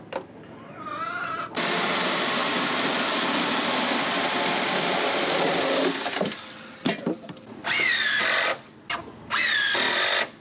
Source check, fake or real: real